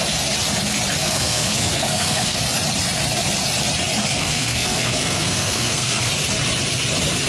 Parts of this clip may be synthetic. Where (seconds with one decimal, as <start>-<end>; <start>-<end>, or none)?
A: 1.0-2.4; 4.1-6.1